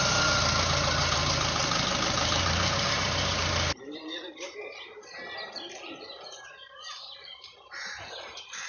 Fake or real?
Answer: fake